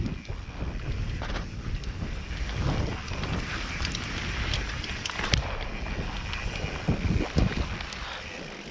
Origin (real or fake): real